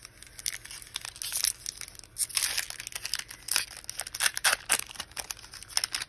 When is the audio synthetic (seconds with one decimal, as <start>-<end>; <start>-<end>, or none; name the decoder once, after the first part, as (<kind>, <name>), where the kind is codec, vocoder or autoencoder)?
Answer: 4.3-5.2 (vocoder, BigVGAN v2)